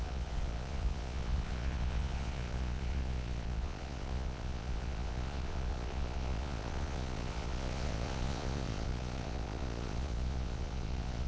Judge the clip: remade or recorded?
remade